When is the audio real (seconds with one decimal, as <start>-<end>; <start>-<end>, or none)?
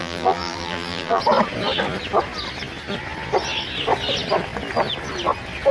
1.2-5.7